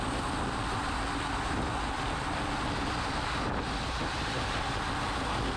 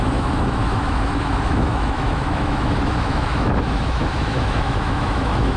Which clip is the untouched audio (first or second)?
first